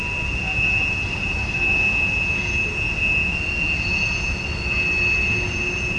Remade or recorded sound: recorded